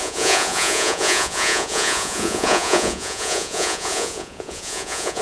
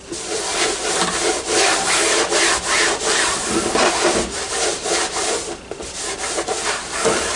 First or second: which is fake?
first